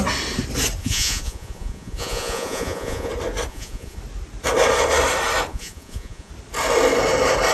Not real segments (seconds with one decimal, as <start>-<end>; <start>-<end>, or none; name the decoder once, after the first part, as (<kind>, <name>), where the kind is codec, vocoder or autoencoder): 0.8-3.1 (vocoder, Vocos); 3.5-4.0; 5.5-6.3